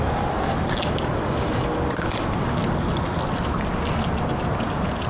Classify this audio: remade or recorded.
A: recorded